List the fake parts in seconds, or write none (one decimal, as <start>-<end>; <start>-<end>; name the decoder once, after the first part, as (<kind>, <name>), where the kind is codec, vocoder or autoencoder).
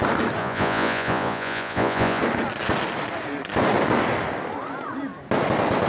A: 0.4-2.2 (vocoder, Vocos)